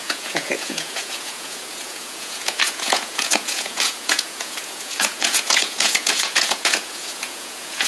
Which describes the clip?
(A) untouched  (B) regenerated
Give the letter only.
B